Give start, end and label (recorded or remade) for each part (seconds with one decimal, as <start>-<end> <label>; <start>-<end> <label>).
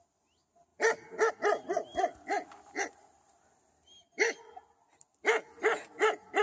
0.0-6.4 recorded